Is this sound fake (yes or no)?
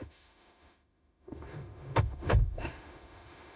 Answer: yes